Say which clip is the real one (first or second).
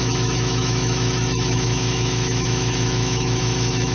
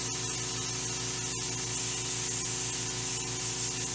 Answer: second